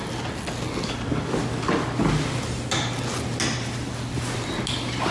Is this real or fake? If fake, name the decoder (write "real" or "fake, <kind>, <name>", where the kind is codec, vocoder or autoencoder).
real